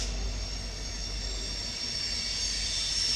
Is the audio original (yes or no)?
yes